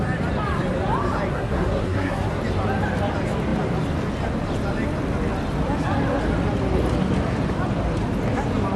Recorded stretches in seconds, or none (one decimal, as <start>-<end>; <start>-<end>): 0.0-1.3; 2.4-8.8